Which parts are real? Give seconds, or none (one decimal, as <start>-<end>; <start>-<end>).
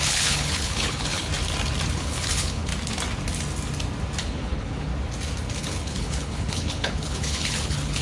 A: 1.3-2.0; 2.7-4.2; 4.9-5.6